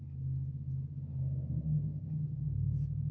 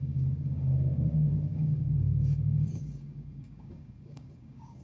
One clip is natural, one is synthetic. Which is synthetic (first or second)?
second